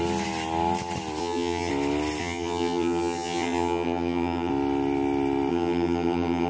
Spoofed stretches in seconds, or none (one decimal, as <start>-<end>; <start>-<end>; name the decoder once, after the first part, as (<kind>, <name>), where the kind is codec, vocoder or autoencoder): 1.2-1.7 (vocoder, HiFi-GAN); 2.2-4.5; 5.5-6.5